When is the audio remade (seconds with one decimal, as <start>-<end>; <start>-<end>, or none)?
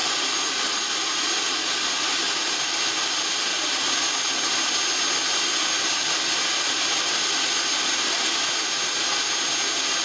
none